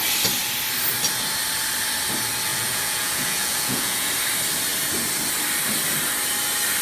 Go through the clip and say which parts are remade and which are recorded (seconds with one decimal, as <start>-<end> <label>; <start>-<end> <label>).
0.0-2.5 recorded; 2.5-4.1 remade; 4.1-6.8 recorded